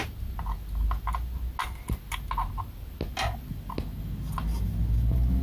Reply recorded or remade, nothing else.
recorded